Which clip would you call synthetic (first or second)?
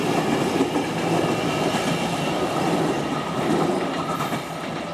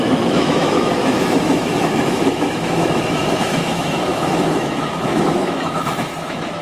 second